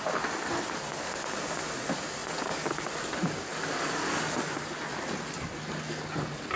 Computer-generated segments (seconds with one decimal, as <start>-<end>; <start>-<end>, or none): none